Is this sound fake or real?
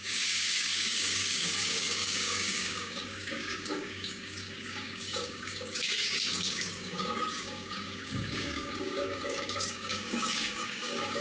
fake